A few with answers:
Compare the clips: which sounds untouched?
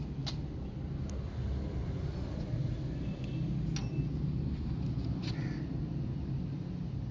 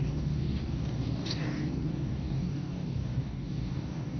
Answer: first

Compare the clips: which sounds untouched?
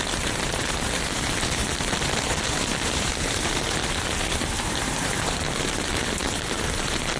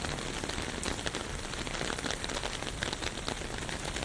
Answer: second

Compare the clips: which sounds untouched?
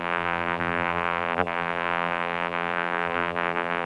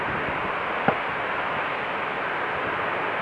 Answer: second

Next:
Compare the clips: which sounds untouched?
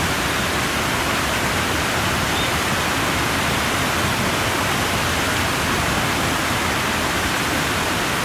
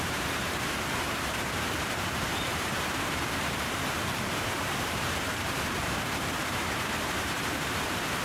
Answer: first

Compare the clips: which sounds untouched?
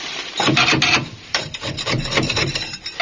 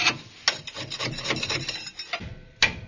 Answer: second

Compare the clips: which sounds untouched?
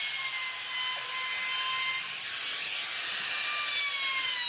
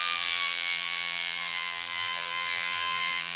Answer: first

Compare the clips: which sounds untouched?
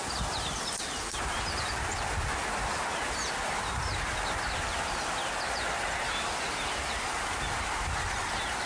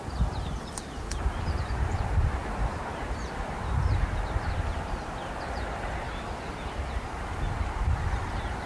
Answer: first